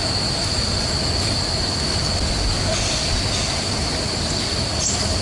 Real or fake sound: real